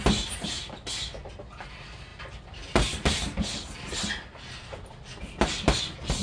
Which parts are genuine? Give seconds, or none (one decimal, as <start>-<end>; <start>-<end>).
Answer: 0.0-6.2